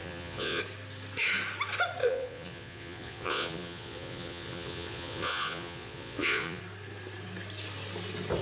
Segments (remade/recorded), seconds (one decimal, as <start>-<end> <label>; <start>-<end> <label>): 0.0-0.6 remade; 0.6-2.0 recorded; 2.0-6.6 remade; 6.6-8.4 recorded